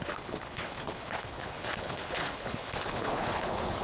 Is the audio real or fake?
fake